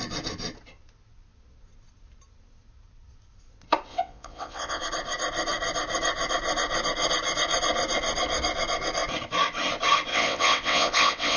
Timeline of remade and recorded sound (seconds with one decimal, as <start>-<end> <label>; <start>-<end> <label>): 0.0-3.9 recorded; 3.9-4.8 remade; 4.8-10.1 recorded; 10.1-11.4 remade